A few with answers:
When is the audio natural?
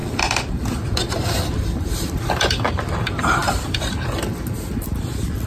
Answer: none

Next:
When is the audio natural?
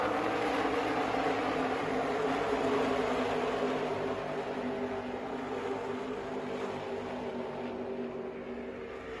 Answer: 0.0-1.8; 2.9-9.2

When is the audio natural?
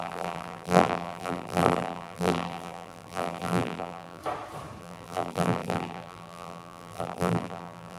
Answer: 4.2-4.8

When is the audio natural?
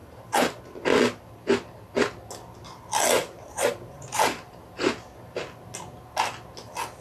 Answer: 0.6-3.2; 4.9-7.0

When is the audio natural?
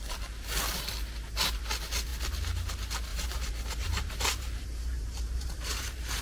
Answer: 0.0-3.1